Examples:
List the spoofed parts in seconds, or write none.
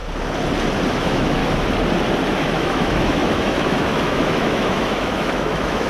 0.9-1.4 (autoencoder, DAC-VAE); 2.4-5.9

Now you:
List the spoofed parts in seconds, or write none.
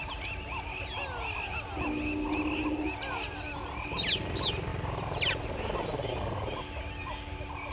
none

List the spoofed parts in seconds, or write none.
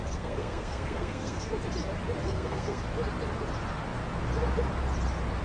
0.0-1.5 (codec, SNAC); 2.2-2.8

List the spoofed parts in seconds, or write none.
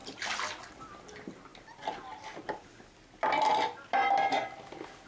none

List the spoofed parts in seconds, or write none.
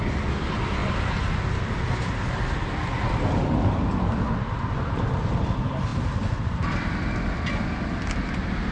none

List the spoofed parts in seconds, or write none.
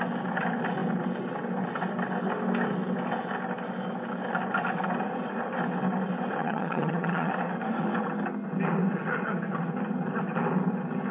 6.4-7.3 (vocoder, HiFi-GAN)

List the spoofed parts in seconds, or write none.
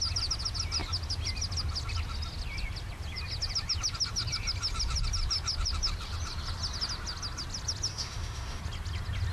7.9-8.6 (autoencoder, DAC-VAE)